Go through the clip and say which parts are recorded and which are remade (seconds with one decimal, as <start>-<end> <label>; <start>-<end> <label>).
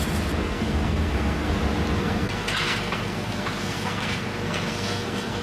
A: 0.0-0.4 recorded; 0.4-1.5 remade; 1.5-2.0 recorded; 2.0-5.4 remade